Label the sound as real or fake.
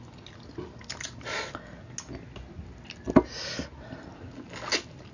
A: real